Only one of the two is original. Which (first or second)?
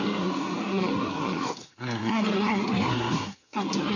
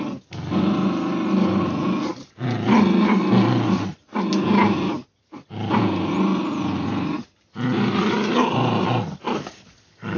second